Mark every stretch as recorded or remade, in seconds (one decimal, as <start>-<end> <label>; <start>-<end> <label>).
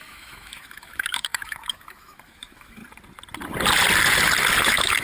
0.0-2.8 remade; 2.8-4.6 recorded; 4.6-5.0 remade